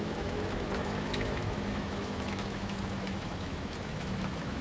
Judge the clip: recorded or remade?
remade